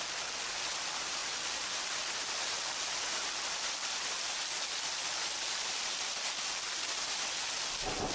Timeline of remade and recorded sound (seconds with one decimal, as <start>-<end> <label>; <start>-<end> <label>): 0.0-8.1 recorded